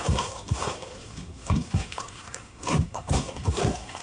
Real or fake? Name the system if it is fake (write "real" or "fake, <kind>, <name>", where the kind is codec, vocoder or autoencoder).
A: fake, codec, SNAC